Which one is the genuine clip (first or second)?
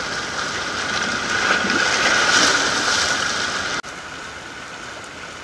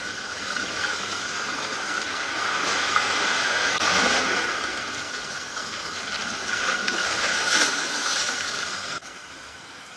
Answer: first